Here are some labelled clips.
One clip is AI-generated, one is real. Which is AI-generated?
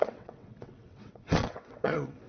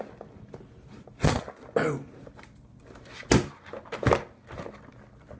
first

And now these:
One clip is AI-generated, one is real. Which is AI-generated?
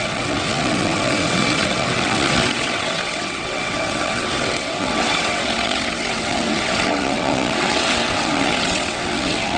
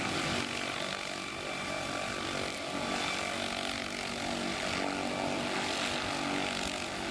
first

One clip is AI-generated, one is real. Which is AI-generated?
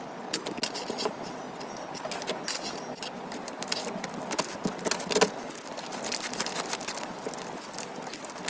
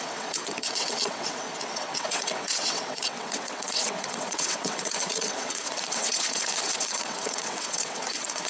second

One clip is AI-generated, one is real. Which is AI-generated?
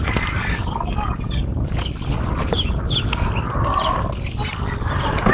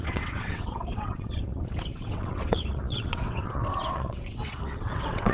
second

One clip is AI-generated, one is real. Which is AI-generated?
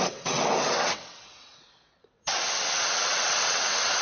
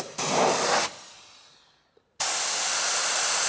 first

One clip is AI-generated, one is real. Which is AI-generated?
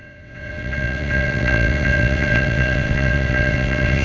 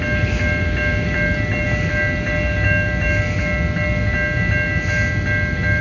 first